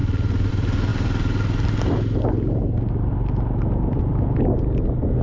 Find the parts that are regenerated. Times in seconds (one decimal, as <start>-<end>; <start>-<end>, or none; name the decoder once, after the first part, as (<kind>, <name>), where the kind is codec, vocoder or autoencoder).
none